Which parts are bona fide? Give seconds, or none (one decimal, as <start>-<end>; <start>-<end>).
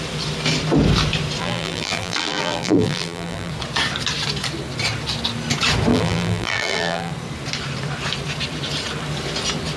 0.0-1.4; 3.5-5.9; 7.1-9.8